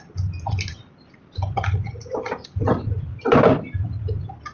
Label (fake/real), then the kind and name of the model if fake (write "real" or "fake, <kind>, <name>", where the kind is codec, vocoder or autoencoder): real